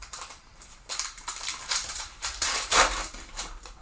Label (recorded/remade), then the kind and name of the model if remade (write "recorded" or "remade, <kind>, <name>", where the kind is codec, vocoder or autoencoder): remade, vocoder, BigVGAN v2